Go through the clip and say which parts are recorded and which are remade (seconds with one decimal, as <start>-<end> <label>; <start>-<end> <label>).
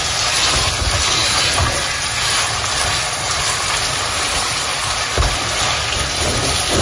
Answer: 0.0-6.8 recorded